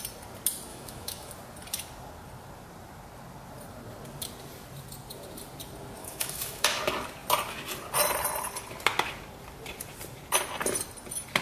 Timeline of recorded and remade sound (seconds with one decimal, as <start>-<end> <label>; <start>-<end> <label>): 0.0-0.7 recorded; 0.7-1.3 remade; 1.3-6.0 recorded; 6.0-6.8 remade; 6.8-11.4 recorded